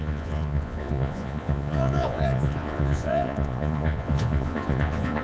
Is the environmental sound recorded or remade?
remade